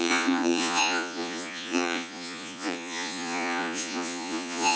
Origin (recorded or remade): remade